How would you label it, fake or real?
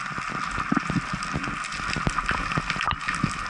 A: real